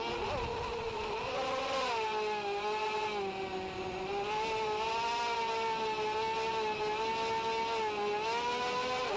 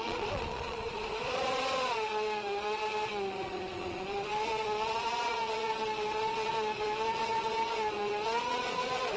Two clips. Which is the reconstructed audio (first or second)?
second